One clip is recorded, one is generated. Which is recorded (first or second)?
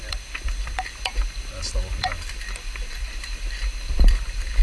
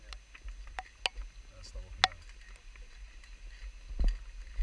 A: second